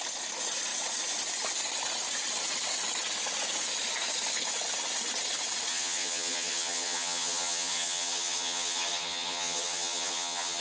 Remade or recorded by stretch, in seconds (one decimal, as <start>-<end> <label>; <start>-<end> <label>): 0.0-5.7 recorded; 5.7-10.6 remade